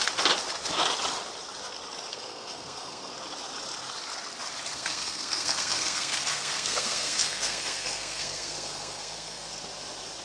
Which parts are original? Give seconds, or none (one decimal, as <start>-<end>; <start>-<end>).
0.0-2.1; 3.1-4.7; 9.5-10.2